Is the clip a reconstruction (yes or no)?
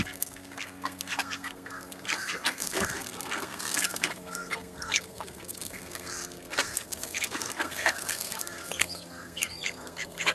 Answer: yes